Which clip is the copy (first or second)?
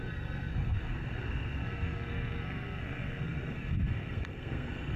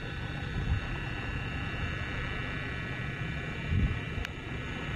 first